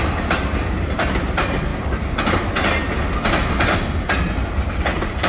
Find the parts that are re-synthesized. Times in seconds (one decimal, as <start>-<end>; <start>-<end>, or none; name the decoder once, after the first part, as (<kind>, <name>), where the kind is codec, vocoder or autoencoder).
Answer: none